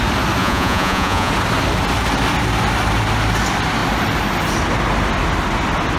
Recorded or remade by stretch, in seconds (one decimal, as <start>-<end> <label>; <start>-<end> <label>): 0.0-0.4 recorded; 0.4-1.3 remade; 1.3-6.0 recorded